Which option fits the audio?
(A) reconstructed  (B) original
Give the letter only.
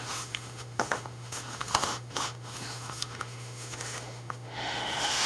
A